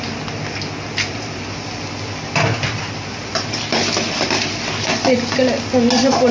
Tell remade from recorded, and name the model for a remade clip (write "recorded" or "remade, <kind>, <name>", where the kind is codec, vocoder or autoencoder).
recorded